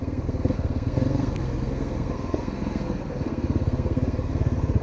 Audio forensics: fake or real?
fake